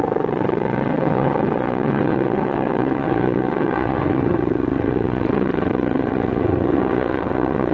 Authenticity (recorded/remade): remade